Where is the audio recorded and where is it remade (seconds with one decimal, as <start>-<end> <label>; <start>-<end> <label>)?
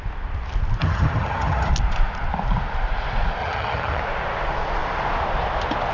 0.0-0.8 recorded; 0.8-1.7 remade; 1.7-3.4 recorded; 3.4-4.0 remade; 4.0-5.9 recorded